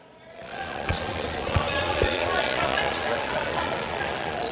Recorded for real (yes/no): no